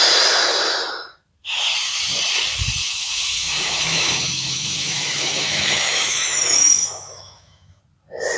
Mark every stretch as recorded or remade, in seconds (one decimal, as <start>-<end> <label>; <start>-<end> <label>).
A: 0.0-2.8 recorded; 2.8-7.8 remade; 7.8-8.4 recorded